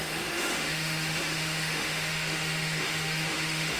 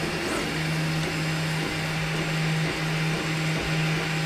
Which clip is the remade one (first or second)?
first